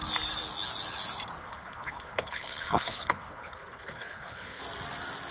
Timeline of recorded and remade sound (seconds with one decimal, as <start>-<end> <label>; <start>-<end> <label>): 0.0-1.4 recorded; 1.4-4.6 remade; 4.6-5.3 recorded